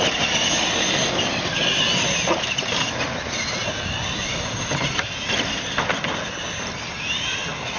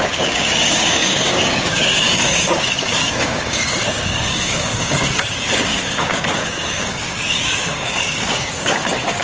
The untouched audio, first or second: first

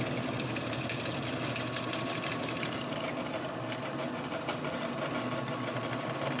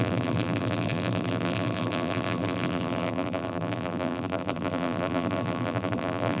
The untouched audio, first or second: first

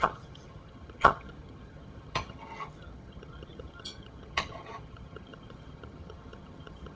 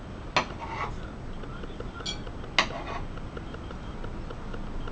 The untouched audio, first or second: second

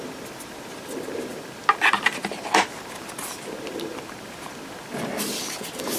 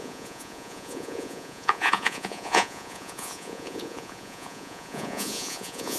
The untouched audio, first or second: first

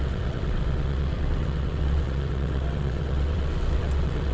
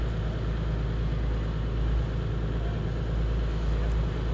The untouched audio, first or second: second